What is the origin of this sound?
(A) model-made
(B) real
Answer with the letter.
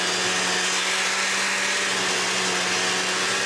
B